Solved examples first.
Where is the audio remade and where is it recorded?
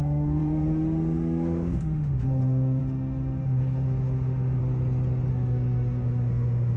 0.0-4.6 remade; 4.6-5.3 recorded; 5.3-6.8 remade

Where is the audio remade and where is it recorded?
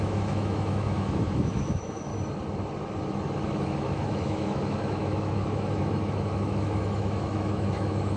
0.0-2.1 remade; 2.1-3.4 recorded; 3.4-8.2 remade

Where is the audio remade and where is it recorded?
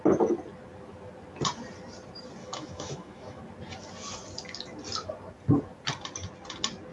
0.0-2.4 recorded; 2.4-3.4 remade; 3.4-6.9 recorded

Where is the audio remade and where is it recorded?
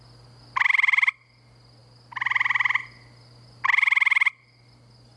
0.0-5.2 recorded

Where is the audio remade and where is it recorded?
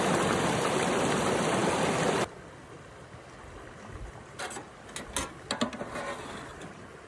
0.0-7.1 recorded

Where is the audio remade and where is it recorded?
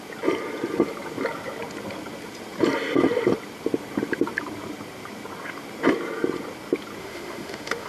0.0-7.0 recorded; 7.0-7.9 remade